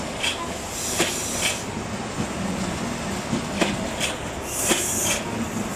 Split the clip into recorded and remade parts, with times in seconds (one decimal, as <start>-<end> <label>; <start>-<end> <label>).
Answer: 0.0-5.8 recorded